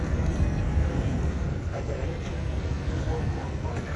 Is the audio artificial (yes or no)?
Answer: yes